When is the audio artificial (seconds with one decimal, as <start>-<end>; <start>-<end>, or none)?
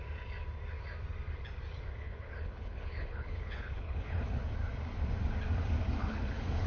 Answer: 2.0-4.4; 6.0-6.7